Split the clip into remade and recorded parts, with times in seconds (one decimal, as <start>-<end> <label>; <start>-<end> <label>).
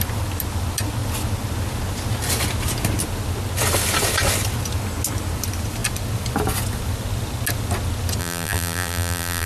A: 0.0-8.2 recorded; 8.2-9.5 remade